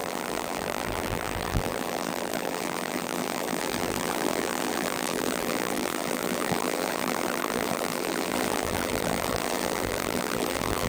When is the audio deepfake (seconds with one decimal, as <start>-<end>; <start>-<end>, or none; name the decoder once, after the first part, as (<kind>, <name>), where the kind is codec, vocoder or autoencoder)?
0.0-10.9 (vocoder, BigVGAN v2)